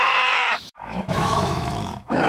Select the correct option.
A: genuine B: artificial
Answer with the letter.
B